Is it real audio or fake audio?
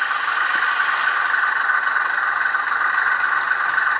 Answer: real